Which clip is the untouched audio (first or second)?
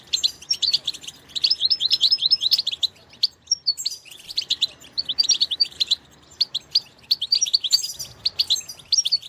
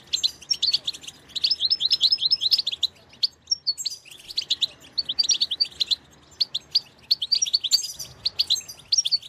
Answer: second